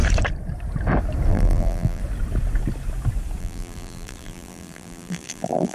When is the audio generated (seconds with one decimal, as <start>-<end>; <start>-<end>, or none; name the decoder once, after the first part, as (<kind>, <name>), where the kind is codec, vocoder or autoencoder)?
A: 1.3-2.0 (vocoder, BigVGAN v2); 3.4-5.7

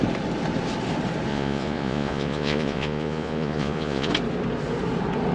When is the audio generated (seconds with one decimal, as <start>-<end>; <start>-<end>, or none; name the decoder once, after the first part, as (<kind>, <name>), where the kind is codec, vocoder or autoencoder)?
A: 1.3-4.1 (vocoder, Vocos)

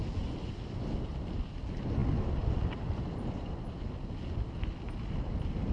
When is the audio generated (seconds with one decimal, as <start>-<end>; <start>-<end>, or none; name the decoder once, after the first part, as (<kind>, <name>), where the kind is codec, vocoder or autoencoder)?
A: none

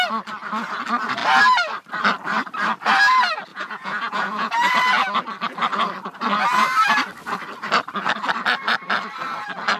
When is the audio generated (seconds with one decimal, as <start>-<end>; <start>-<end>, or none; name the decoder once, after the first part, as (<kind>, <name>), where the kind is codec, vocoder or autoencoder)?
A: 3.5-4.7 (vocoder, Vocos)

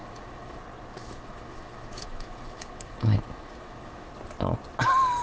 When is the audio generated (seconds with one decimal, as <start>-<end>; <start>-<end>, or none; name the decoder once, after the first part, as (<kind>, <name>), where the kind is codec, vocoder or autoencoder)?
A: 0.0-0.6 (autoencoder, DAC-VAE); 1.0-4.1